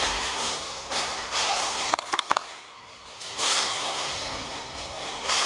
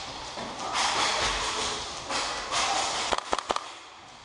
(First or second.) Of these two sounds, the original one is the second